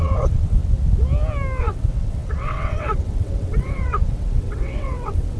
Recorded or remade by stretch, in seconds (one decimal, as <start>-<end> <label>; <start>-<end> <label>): 0.0-0.6 remade; 0.6-1.6 recorded; 1.6-5.4 remade